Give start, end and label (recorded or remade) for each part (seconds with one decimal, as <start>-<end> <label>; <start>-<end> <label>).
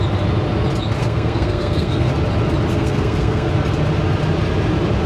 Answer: 0.0-1.0 recorded; 1.0-2.1 remade; 2.1-2.7 recorded; 2.7-3.5 remade; 3.5-5.1 recorded